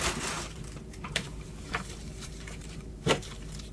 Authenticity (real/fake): fake